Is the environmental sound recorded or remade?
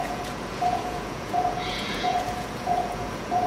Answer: remade